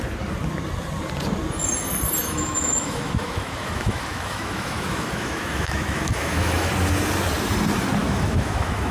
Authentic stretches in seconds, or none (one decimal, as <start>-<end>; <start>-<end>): 0.0-2.2; 6.7-8.0